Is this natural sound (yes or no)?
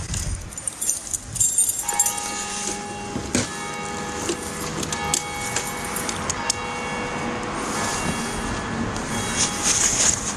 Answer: yes